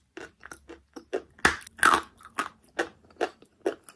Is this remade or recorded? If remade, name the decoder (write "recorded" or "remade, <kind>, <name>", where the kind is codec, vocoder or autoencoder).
recorded